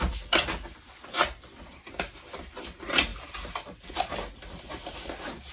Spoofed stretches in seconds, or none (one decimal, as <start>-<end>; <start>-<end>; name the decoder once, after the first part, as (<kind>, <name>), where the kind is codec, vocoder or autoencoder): none